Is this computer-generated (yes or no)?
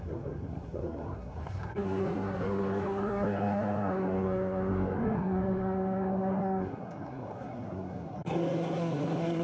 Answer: yes